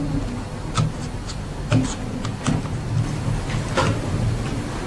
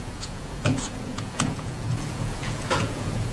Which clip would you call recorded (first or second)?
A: first